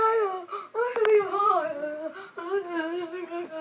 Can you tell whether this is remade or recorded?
recorded